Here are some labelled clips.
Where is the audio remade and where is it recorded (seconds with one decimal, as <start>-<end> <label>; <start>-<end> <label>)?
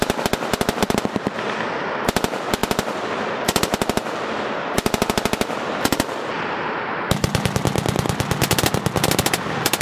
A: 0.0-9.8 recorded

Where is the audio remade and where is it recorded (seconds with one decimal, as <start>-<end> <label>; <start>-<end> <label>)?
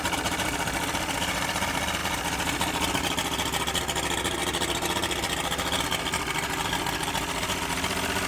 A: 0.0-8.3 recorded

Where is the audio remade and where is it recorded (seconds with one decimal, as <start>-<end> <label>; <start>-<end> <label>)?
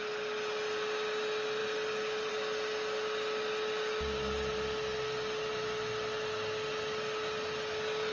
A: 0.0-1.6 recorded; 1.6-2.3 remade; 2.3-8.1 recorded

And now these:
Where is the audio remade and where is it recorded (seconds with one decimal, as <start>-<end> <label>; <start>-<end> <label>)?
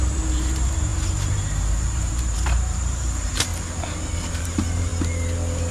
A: 0.0-3.5 remade; 3.5-4.4 recorded; 4.4-4.9 remade; 4.9-5.7 recorded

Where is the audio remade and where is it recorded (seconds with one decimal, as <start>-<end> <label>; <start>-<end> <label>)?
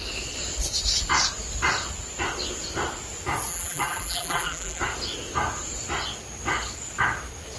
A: 0.0-3.5 recorded; 3.5-4.8 remade; 4.8-7.6 recorded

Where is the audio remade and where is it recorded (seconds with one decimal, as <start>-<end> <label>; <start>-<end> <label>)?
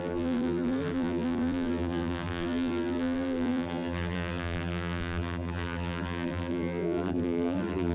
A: 0.0-7.9 remade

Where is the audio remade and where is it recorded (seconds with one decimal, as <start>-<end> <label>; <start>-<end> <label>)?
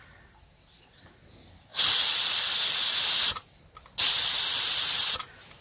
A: 0.0-1.7 recorded; 1.7-4.3 remade; 4.3-5.6 recorded